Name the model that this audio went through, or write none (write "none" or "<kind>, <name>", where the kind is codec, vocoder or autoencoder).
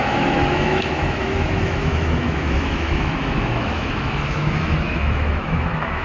autoencoder, DAC-VAE